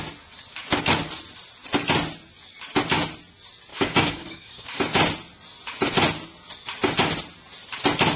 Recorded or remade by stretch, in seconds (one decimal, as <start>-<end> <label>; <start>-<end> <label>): 0.0-3.7 recorded; 3.7-4.8 remade; 4.8-8.2 recorded